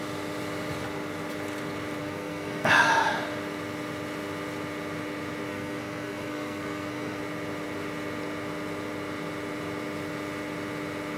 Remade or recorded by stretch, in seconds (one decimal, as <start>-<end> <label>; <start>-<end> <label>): 0.0-2.0 recorded; 2.0-2.9 remade; 2.9-5.5 recorded; 5.5-7.2 remade; 7.2-11.2 recorded